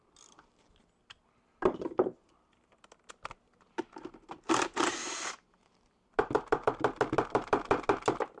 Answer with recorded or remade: recorded